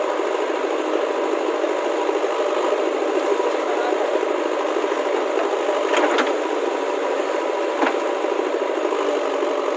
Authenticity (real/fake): real